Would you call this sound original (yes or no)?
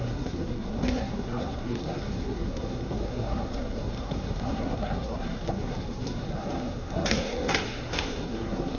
no